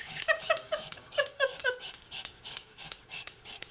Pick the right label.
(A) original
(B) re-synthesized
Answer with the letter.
B